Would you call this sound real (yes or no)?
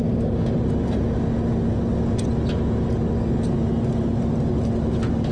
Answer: yes